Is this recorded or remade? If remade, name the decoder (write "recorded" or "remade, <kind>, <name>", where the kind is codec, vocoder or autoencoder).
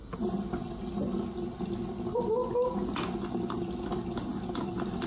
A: recorded